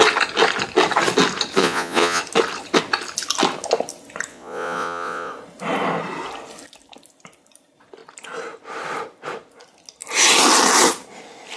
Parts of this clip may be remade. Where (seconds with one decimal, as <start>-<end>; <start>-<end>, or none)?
1.6-2.2; 4.3-5.3